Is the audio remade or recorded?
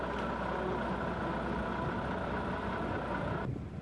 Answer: recorded